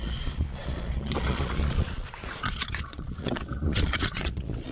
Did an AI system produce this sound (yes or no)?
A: yes